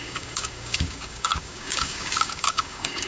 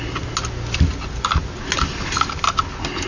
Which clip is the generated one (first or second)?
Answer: first